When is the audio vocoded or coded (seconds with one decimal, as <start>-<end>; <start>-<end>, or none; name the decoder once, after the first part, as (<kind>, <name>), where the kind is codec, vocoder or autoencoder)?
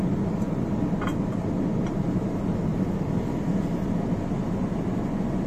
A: none